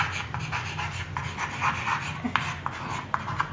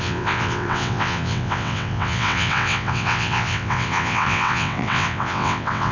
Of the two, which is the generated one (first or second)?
second